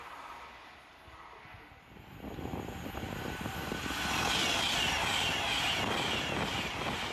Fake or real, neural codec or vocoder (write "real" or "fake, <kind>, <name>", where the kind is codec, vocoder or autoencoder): real